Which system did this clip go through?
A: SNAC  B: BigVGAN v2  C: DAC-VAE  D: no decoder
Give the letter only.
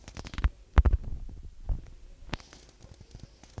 D